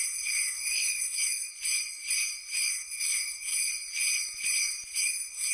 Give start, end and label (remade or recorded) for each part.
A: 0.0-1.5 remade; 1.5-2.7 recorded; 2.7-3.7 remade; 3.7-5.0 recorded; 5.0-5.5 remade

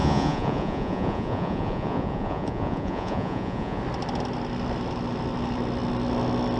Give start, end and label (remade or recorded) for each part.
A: 0.0-3.8 remade; 3.8-6.6 recorded

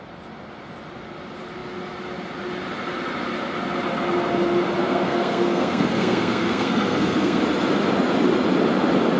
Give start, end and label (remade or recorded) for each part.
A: 0.0-4.8 recorded; 4.8-7.4 remade; 7.4-9.2 recorded

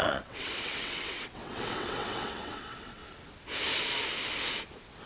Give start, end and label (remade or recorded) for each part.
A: 0.0-3.0 remade; 3.0-5.1 recorded